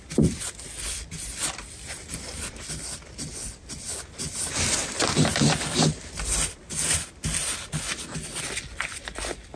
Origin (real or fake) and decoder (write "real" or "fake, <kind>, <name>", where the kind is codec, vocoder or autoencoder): real